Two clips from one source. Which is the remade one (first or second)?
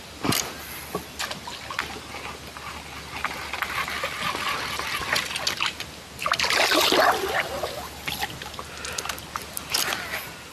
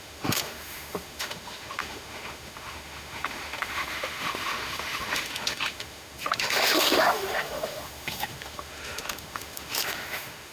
second